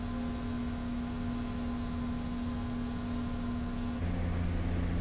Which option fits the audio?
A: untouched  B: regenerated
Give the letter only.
A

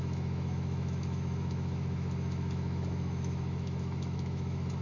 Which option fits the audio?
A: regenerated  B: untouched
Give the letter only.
A